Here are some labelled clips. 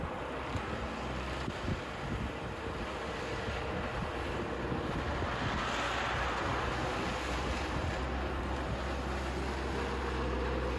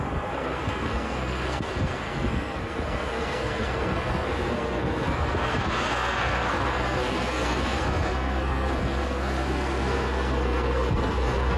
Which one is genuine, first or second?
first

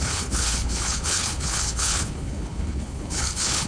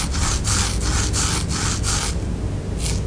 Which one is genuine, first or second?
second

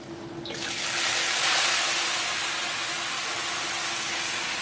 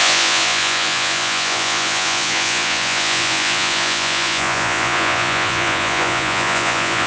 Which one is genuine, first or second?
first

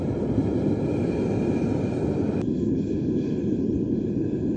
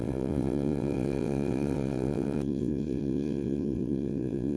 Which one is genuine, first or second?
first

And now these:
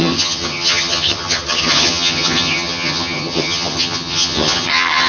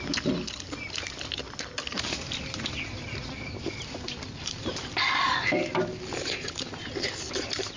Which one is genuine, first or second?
second